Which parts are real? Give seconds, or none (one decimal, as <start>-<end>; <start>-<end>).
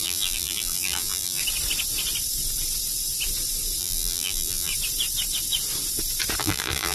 1.4-3.8; 4.7-6.4